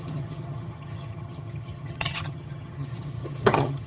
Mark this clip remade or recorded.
remade